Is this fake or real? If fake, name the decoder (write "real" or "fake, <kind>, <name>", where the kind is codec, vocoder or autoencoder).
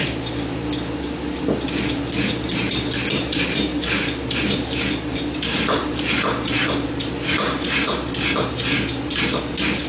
real